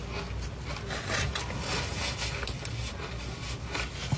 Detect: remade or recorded recorded